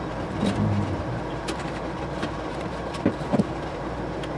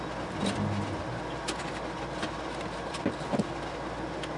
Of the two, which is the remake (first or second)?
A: first